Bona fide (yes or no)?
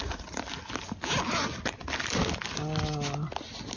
yes